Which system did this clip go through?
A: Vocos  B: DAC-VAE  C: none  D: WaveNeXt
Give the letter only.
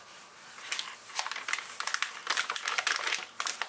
C